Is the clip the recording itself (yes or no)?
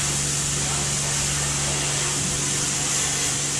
yes